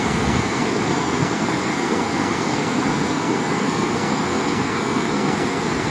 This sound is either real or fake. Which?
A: fake